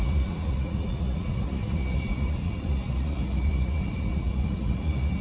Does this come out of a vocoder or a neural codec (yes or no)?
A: yes